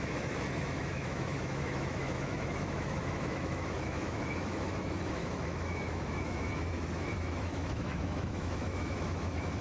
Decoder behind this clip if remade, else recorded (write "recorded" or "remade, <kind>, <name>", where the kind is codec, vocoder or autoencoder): remade, autoencoder, DAC-VAE